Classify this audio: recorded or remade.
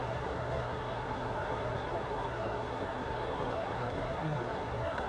remade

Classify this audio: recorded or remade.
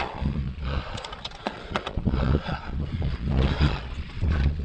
remade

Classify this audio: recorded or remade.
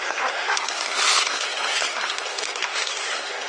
remade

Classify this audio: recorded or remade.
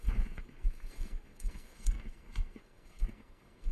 remade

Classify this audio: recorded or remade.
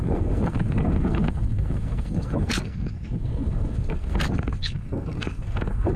remade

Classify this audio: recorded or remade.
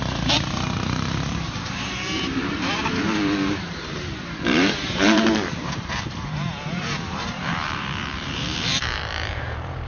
remade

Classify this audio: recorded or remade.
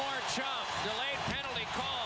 recorded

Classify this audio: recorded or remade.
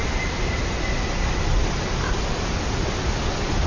recorded